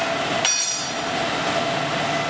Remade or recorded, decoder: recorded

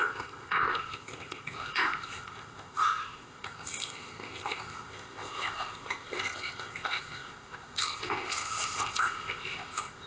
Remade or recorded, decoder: remade, codec, ZipCodec